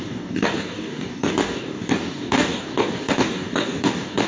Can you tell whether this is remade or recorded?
remade